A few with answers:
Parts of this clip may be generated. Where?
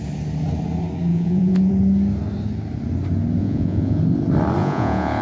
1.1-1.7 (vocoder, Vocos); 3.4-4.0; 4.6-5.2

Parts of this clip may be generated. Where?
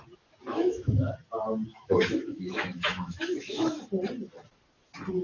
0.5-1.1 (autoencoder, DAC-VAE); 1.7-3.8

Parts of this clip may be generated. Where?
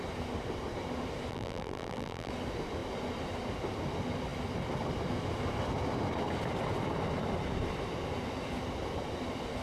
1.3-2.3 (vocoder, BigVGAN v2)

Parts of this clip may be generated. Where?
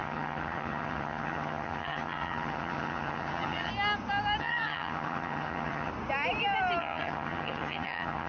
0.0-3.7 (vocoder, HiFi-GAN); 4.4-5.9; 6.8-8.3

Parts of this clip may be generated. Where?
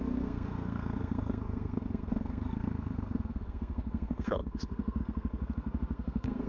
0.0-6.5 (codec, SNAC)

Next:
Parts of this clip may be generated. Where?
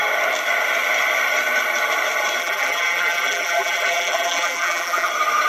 2.4-5.1 (vocoder, BigVGAN v2)